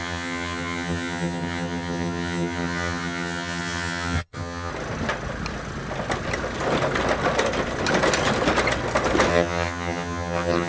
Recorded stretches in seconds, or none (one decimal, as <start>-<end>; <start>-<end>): 4.7-9.3